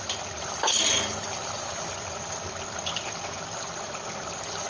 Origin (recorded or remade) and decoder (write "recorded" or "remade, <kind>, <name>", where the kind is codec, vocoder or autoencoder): remade, vocoder, BigVGAN v2